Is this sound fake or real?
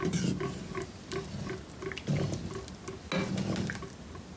real